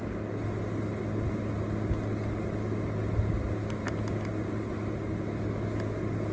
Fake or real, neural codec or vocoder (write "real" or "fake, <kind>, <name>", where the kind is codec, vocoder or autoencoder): real